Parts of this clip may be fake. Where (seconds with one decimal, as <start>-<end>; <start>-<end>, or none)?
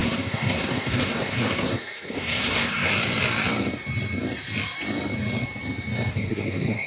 0.0-2.9; 6.1-6.9